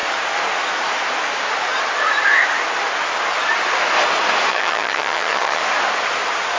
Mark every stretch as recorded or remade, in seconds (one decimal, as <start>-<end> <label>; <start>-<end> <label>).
0.0-4.5 recorded; 4.5-5.6 remade; 5.6-6.6 recorded